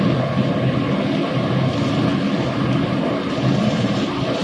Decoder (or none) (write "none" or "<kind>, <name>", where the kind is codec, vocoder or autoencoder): none